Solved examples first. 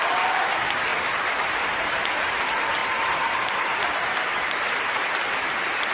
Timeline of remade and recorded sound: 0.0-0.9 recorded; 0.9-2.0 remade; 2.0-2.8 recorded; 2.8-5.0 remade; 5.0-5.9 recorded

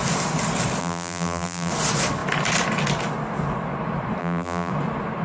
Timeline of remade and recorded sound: 0.0-0.8 recorded; 0.8-1.7 remade; 1.7-4.2 recorded; 4.2-4.7 remade; 4.7-5.2 recorded

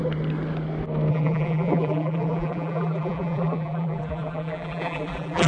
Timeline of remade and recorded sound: 0.0-1.1 recorded; 1.1-5.5 remade